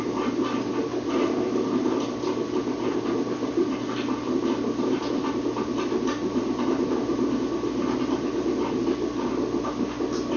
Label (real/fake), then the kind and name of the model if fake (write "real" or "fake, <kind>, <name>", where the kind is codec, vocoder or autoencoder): real